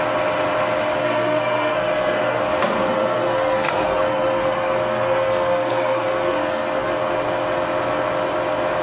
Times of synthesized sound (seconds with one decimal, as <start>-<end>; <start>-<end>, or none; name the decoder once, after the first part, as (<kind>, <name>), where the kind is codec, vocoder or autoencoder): 1.0-2.4 (codec, SNAC); 2.9-6.9